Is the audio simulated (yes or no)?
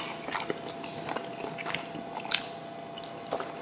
no